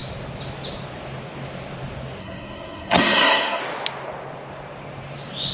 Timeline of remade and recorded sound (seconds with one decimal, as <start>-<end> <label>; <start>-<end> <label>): 0.0-2.2 recorded; 2.2-3.6 remade; 3.6-5.5 recorded